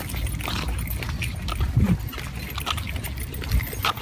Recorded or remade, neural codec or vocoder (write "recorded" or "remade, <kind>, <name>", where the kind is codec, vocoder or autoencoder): recorded